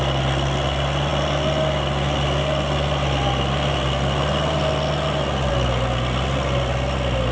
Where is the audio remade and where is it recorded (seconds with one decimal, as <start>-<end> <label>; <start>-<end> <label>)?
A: 0.0-7.3 recorded